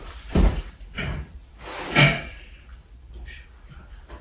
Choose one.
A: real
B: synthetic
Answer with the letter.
B